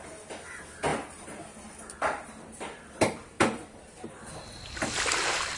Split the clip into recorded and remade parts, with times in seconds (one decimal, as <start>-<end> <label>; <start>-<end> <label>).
0.0-5.6 recorded